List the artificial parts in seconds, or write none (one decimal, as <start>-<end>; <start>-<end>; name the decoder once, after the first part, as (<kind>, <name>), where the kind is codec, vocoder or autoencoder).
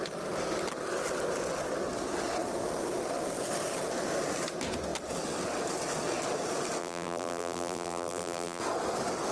6.8-8.6 (vocoder, BigVGAN v2)